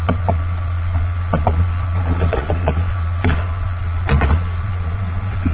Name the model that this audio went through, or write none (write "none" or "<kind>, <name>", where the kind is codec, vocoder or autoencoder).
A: vocoder, Vocos